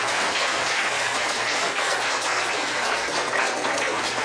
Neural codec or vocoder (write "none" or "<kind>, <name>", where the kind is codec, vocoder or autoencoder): codec, SNAC